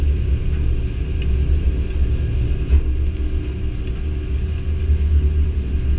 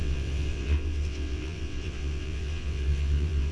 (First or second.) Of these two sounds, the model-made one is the second